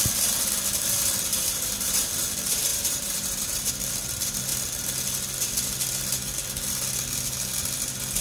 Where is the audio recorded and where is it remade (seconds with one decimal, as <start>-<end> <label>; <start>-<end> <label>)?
0.0-1.3 recorded; 1.3-2.1 remade; 2.1-2.7 recorded; 2.7-3.7 remade; 3.7-8.2 recorded